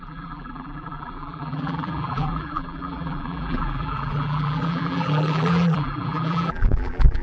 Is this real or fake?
fake